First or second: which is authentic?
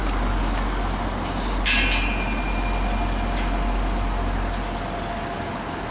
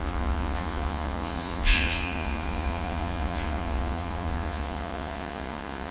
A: first